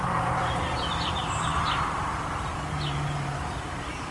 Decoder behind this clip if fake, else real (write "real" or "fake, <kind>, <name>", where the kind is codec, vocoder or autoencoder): fake, vocoder, BigVGAN v2